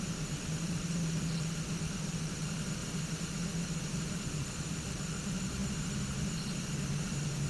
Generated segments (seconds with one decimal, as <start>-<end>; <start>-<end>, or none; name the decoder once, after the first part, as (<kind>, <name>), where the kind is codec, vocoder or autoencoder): 0.0-2.8 (vocoder, BigVGAN v2); 3.3-5.6; 6.9-7.5